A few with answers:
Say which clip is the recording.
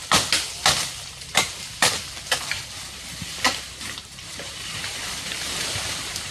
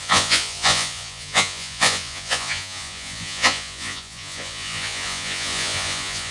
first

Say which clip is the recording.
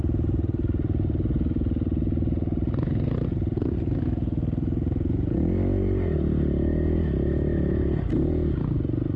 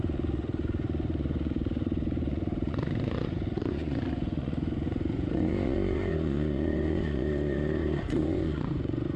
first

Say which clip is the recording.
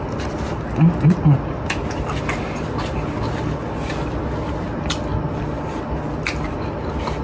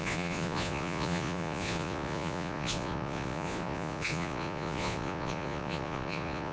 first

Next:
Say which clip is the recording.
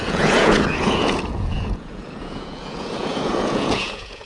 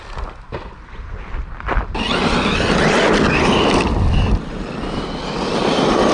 second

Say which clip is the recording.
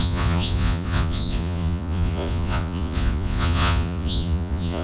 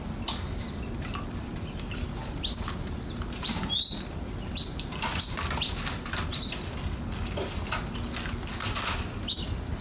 second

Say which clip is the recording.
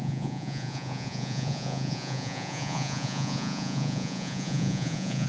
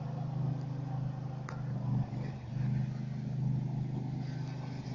second